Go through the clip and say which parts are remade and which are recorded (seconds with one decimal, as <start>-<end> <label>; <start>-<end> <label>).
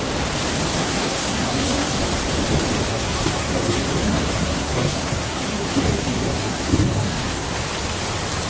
0.0-0.8 recorded; 0.8-1.9 remade; 1.9-2.9 recorded; 2.9-7.6 remade; 7.6-8.5 recorded